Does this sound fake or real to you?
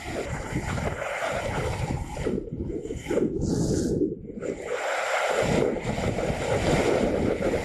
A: real